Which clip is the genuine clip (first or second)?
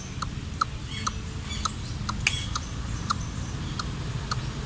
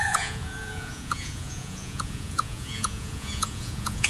first